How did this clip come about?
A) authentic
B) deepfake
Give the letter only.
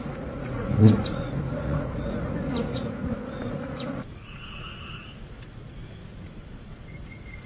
B